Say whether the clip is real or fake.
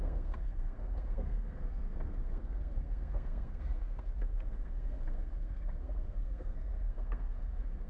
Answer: fake